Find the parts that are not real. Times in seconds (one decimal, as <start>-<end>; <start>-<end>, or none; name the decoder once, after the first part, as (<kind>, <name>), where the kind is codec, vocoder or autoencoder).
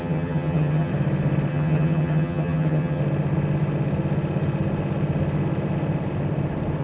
0.0-0.9 (vocoder, HiFi-GAN); 1.5-3.0